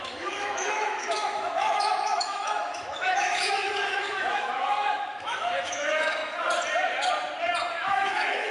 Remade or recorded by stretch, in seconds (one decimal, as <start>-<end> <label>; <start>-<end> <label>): 0.0-6.2 remade; 6.2-7.7 recorded; 7.7-8.5 remade